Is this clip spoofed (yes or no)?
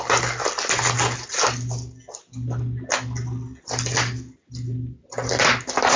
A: no